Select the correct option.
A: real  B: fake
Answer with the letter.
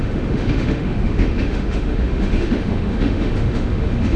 B